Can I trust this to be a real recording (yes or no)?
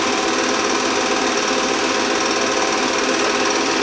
yes